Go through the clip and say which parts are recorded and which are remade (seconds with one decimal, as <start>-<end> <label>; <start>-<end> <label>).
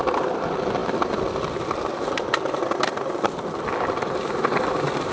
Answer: 0.0-5.1 recorded